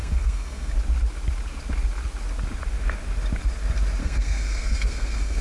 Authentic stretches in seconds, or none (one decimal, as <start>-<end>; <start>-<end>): 0.7-4.0